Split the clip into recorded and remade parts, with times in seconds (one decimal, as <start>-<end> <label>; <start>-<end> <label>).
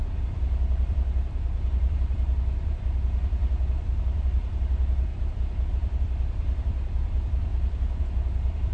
0.0-3.4 remade; 3.4-4.0 recorded; 4.0-5.1 remade; 5.1-5.7 recorded; 5.7-8.7 remade